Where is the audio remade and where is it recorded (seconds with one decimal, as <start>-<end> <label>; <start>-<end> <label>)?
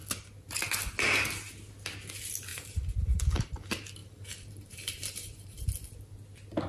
0.0-2.5 recorded; 2.5-3.6 remade; 3.6-4.0 recorded; 4.0-5.7 remade; 5.7-6.7 recorded